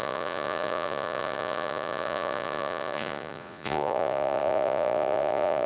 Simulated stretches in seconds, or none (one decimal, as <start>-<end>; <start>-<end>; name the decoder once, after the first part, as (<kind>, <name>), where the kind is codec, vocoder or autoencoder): 0.0-5.7 (vocoder, Vocos)